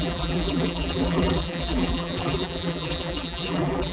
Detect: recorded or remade remade